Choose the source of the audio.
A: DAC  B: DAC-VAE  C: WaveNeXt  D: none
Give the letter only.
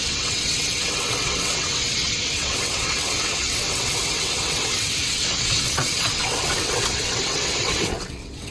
C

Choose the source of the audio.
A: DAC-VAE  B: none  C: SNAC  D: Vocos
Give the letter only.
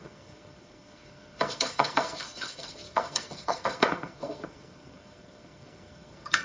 C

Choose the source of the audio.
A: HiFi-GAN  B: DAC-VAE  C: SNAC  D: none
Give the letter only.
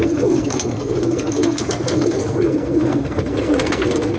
C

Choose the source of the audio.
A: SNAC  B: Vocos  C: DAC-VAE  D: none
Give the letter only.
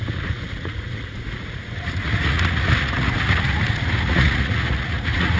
B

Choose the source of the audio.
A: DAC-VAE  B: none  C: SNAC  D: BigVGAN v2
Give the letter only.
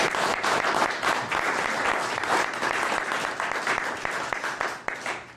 D